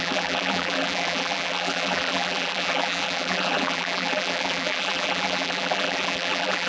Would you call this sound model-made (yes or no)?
yes